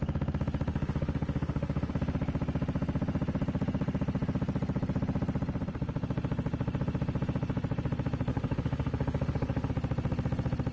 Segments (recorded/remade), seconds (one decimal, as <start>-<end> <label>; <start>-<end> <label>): 0.0-0.7 recorded; 0.7-1.9 remade; 1.9-8.3 recorded; 8.3-9.7 remade; 9.7-10.7 recorded